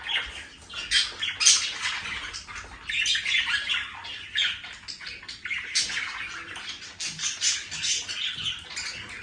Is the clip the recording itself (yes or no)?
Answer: yes